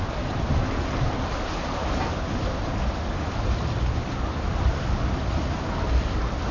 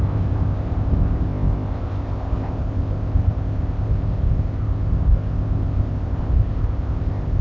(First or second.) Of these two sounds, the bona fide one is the first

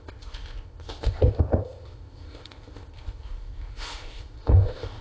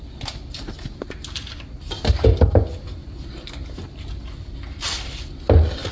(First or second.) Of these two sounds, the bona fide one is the second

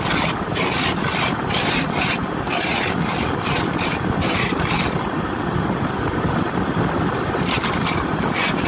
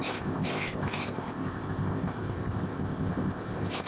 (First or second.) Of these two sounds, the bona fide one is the first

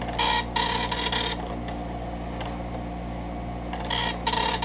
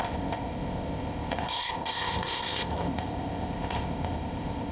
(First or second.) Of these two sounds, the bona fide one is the first